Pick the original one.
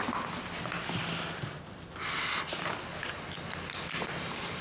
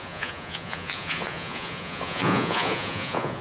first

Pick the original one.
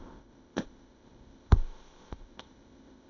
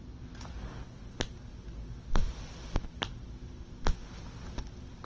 second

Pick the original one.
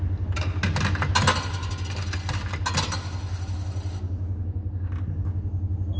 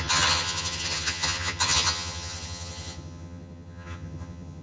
first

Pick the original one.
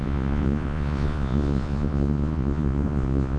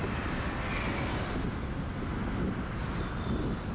second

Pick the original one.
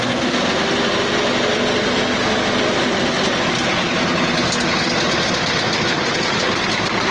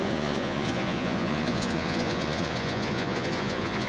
first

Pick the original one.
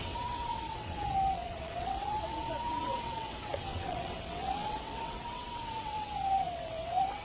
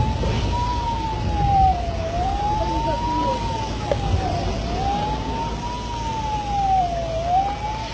second